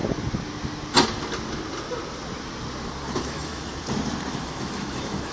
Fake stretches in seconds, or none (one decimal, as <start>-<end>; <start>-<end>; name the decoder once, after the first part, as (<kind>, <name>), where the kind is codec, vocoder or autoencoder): 3.2-3.7 (autoencoder, DAC-VAE); 4.3-5.3